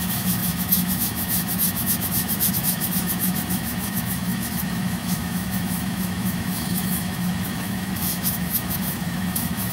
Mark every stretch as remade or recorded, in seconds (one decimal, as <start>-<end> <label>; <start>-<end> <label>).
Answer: 0.0-9.7 remade